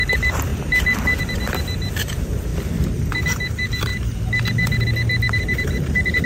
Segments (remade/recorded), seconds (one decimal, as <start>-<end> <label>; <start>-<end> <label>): 0.0-0.5 remade; 0.5-1.2 recorded; 1.2-2.5 remade; 2.5-3.2 recorded; 3.2-3.9 remade; 3.9-5.4 recorded; 5.4-6.3 remade